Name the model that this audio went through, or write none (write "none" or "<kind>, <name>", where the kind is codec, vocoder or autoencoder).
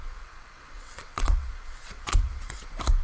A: vocoder, WaveNeXt